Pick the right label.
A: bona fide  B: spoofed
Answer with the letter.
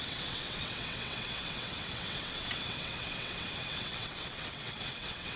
B